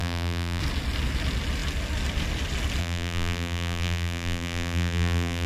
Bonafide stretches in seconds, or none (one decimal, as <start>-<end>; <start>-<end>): 0.6-2.8